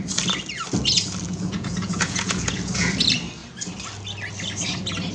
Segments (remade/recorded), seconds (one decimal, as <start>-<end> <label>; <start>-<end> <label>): 0.0-1.3 recorded; 1.3-2.9 remade; 2.9-5.1 recorded